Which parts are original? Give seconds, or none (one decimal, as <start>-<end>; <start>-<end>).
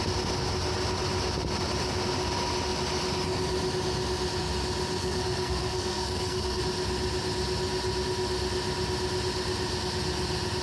0.0-5.0; 6.6-10.6